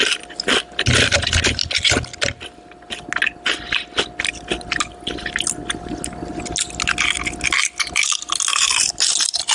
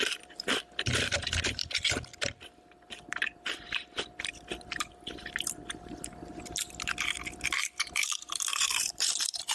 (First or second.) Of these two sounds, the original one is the first